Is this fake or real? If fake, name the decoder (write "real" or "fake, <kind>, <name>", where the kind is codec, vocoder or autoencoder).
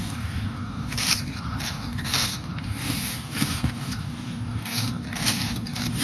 fake, codec, DAC